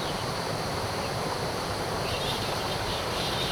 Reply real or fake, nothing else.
fake